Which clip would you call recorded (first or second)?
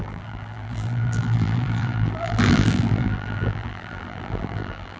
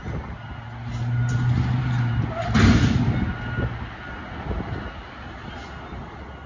second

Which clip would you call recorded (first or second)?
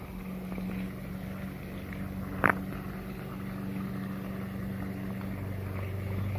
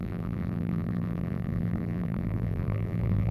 first